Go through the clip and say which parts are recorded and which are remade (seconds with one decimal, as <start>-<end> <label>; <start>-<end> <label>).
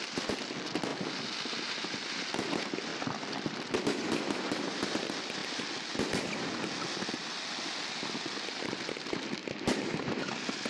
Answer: 0.0-0.9 remade; 0.9-1.7 recorded; 1.7-5.4 remade; 5.4-7.2 recorded; 7.2-10.7 remade